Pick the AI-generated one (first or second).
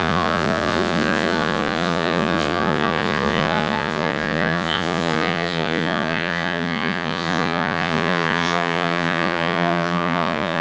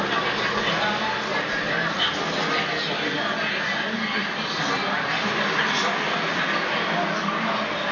first